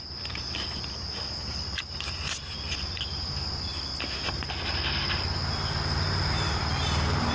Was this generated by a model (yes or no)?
no